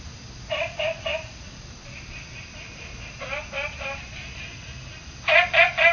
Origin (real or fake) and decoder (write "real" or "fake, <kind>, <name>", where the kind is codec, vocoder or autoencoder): real